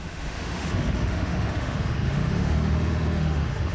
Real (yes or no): no